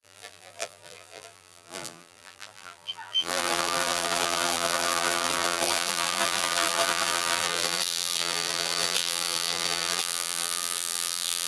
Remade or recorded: remade